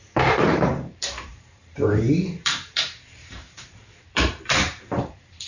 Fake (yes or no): yes